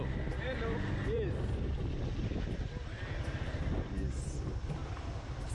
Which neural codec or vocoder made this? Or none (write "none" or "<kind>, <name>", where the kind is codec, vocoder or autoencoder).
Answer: none